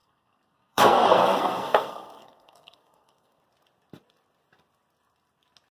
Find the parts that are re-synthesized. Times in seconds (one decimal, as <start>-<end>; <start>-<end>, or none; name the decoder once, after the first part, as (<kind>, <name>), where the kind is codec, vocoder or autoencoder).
0.0-3.4 (codec, SNAC)